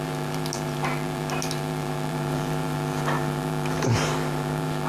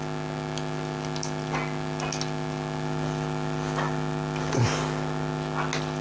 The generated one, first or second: first